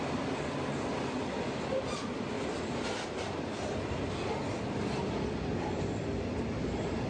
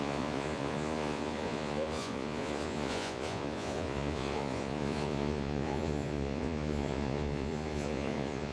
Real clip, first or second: first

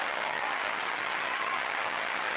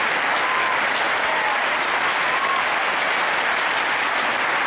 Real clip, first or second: second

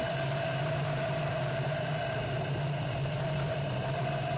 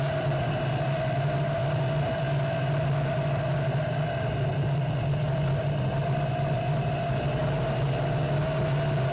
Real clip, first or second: second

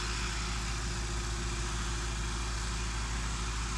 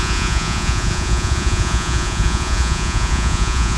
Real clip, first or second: first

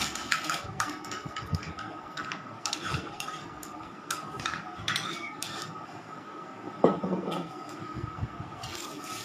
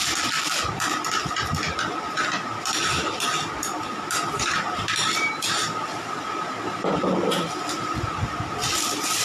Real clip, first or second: second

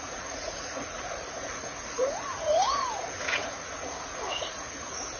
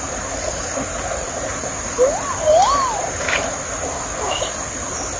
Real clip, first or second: second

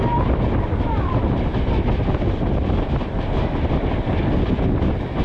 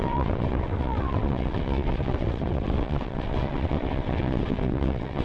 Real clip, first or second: first